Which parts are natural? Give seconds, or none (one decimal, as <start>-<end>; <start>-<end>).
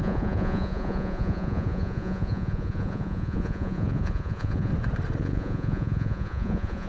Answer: 4.7-5.2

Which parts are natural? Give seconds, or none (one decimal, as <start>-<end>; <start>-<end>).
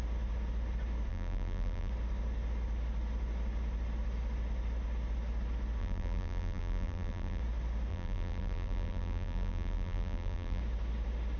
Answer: 0.0-1.1; 1.9-5.8; 7.4-7.9; 10.6-11.4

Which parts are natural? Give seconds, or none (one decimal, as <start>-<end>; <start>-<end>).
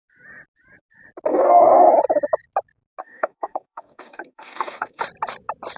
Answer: 0.0-1.3; 1.9-3.0; 5.0-5.8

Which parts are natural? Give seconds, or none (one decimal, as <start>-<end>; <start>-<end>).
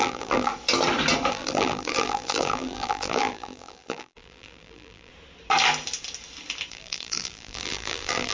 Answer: 0.5-1.3; 5.1-6.7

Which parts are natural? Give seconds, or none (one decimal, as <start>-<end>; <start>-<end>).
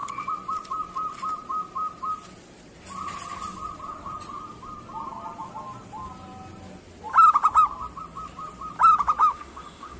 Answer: 0.0-9.2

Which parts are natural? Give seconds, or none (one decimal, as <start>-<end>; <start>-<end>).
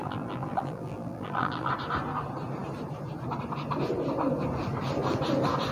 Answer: 1.7-5.7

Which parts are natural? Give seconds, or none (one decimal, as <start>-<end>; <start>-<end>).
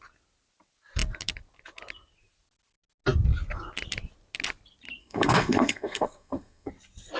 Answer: 0.0-5.0; 6.7-7.2